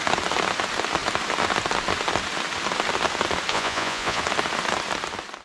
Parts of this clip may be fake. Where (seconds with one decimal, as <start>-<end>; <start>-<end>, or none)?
3.5-4.2

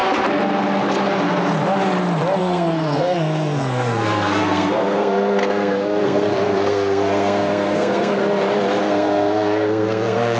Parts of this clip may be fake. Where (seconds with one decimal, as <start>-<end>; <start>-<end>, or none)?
2.4-8.2; 8.8-10.4

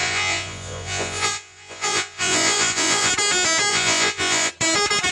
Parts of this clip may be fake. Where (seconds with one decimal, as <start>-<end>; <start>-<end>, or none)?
0.0-3.1; 3.7-4.5

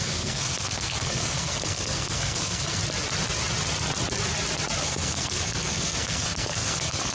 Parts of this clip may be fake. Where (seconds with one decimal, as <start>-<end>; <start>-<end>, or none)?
0.0-2.8; 4.8-7.1

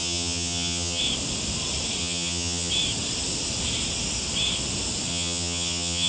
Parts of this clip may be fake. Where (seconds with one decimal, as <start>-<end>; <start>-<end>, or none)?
0.0-1.0; 2.0-2.7; 5.1-6.1

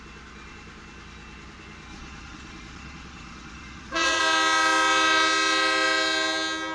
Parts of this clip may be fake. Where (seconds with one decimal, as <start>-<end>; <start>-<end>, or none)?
1.9-4.2

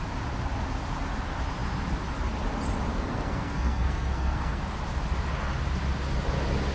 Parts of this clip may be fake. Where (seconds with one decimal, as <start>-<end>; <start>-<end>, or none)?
2.9-4.6